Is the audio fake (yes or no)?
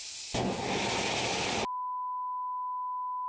no